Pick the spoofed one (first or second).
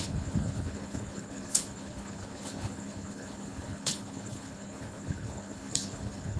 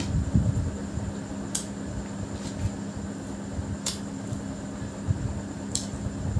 first